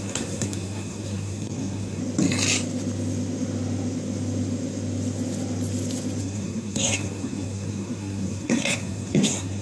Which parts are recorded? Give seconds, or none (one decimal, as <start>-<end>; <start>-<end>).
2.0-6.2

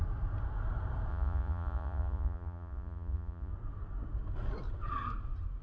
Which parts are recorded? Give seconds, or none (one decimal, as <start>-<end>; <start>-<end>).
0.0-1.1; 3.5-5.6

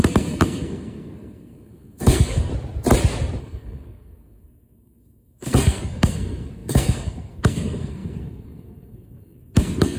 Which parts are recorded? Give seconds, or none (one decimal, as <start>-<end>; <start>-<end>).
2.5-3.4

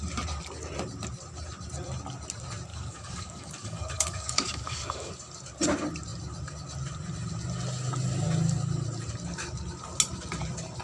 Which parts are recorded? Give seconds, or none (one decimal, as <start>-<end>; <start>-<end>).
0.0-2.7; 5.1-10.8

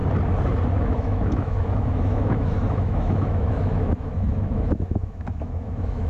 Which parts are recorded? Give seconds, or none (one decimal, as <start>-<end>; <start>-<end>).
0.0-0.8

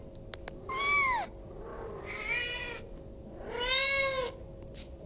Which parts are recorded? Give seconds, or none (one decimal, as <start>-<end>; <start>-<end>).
0.0-5.1